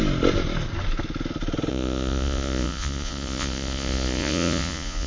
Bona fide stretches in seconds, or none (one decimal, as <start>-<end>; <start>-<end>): 0.0-1.7